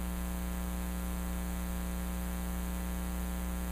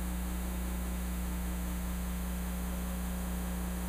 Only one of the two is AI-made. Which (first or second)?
second